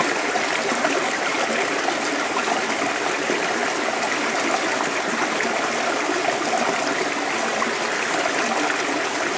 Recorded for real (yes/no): yes